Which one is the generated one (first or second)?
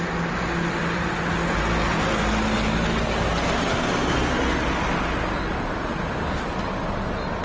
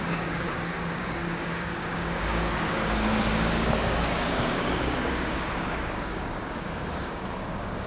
second